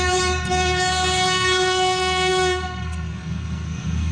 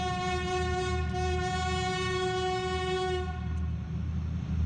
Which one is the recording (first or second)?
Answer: second